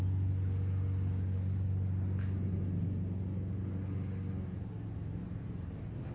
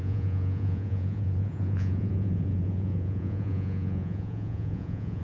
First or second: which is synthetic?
second